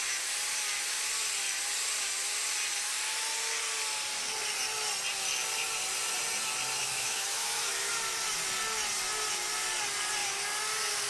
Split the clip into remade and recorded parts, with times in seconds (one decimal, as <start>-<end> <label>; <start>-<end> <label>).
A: 0.0-6.8 recorded; 6.8-7.9 remade; 7.9-11.1 recorded